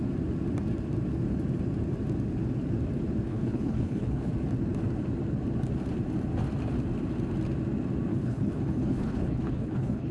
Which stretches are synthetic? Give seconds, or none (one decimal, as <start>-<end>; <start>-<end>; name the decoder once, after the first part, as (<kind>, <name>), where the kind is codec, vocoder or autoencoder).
3.3-4.3 (codec, HILCodec); 8.1-10.1